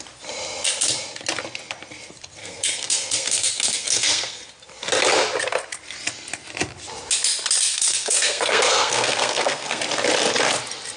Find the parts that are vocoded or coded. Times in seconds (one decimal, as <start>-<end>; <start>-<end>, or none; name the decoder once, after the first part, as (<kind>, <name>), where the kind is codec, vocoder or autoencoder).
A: 2.4-4.5 (codec, SNAC); 7.7-9.8